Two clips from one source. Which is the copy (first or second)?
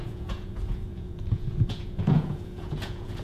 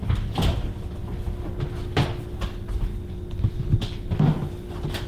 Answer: first